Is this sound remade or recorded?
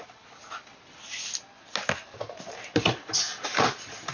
recorded